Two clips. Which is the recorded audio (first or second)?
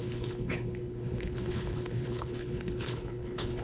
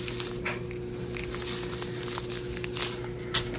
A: second